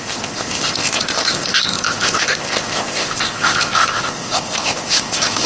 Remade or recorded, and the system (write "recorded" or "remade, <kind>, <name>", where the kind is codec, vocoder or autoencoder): remade, codec, ZipCodec